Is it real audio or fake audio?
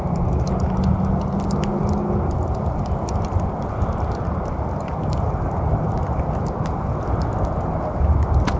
real